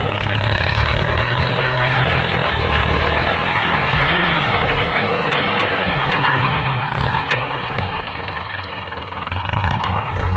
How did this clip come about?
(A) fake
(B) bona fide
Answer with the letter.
A